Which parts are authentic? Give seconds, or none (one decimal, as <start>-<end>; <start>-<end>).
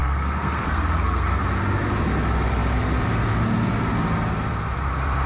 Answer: 1.4-5.3